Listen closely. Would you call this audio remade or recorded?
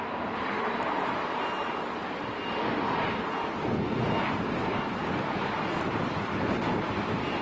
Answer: recorded